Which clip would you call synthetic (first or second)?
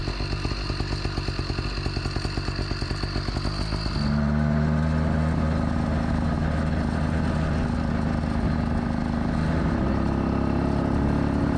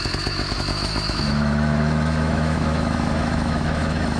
second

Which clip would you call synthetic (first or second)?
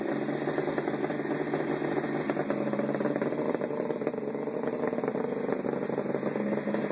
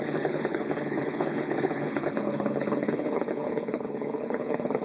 second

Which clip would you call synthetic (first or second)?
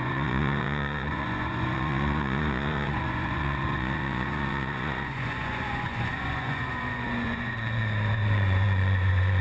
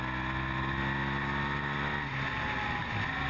first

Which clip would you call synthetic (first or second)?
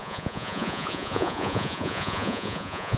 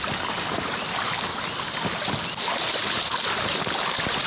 first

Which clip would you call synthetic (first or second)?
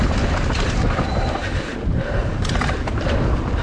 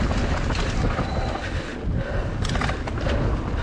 first